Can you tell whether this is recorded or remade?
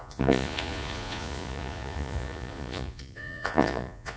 remade